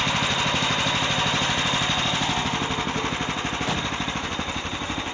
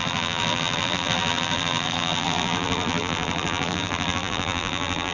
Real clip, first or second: first